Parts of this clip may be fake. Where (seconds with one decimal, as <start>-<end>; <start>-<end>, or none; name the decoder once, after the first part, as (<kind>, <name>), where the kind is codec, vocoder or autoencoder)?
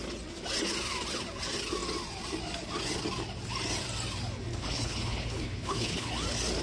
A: 4.5-6.1 (codec, HILCodec)